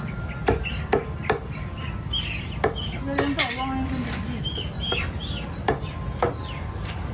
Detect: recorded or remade recorded